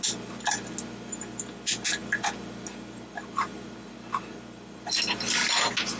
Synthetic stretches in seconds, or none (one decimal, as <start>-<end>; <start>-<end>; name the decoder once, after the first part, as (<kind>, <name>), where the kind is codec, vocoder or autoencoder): none

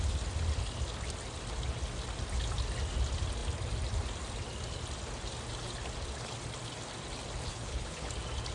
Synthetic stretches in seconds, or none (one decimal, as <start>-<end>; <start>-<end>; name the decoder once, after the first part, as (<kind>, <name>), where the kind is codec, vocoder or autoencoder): 7.5-8.1 (codec, HILCodec)

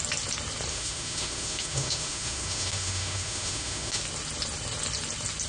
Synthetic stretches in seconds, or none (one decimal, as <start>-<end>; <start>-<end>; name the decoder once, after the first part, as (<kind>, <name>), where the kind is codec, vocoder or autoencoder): 0.7-4.0 (autoencoder, DAC-VAE)

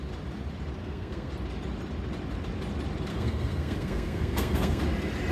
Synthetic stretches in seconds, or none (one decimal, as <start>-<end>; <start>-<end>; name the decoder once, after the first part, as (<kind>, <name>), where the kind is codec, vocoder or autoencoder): 0.8-1.3 (codec, SNAC); 3.1-4.8

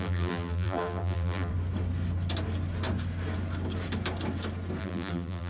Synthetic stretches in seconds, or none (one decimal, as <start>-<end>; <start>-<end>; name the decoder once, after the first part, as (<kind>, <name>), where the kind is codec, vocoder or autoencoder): 0.0-1.5 (vocoder, BigVGAN v2); 4.8-5.5

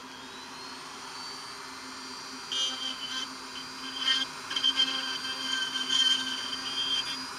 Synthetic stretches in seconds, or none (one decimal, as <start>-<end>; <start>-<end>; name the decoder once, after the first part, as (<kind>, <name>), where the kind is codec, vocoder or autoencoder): none

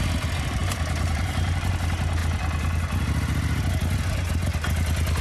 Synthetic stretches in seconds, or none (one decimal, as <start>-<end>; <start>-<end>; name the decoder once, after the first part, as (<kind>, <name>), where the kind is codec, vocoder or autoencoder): 0.6-1.7 (vocoder, BigVGAN v2)